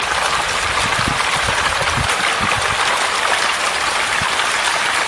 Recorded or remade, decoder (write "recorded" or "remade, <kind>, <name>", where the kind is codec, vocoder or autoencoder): recorded